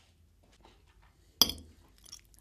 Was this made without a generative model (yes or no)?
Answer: yes